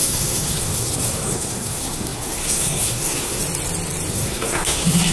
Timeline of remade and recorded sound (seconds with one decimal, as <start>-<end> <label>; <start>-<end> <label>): 0.0-3.4 remade; 3.4-4.1 recorded; 4.1-5.1 remade